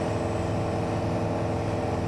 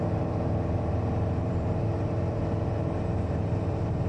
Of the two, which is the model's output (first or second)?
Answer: second